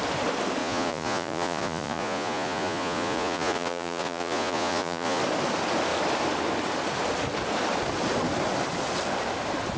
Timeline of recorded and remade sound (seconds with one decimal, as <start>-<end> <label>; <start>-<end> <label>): 0.0-0.6 recorded; 0.6-5.2 remade; 5.2-9.8 recorded